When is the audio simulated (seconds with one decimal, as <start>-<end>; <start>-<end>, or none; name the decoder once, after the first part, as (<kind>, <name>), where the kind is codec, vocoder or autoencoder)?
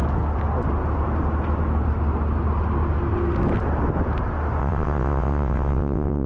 4.6-6.3 (vocoder, WaveNeXt)